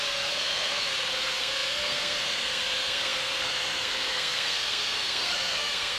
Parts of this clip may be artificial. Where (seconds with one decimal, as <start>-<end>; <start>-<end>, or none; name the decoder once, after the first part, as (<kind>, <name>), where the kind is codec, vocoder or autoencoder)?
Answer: 0.0-6.0 (codec, SNAC)